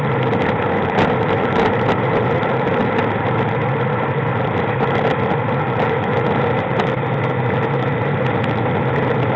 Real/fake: real